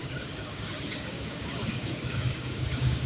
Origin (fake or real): fake